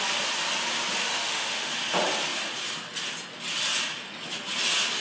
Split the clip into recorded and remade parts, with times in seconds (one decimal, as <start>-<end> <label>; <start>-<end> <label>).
0.0-1.0 recorded; 1.0-1.7 remade; 1.7-5.0 recorded